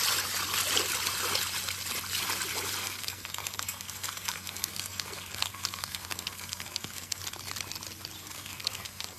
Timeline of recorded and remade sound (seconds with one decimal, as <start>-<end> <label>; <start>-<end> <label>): 0.0-2.8 recorded; 2.8-7.2 remade; 7.2-8.2 recorded; 8.2-9.2 remade